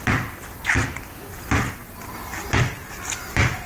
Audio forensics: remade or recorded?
recorded